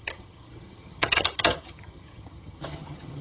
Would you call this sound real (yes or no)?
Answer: no